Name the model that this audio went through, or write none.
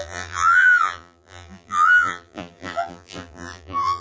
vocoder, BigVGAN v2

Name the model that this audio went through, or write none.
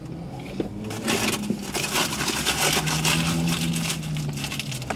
none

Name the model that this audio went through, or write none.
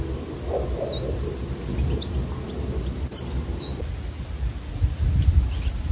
none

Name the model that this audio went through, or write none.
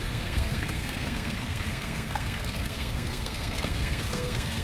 codec, SNAC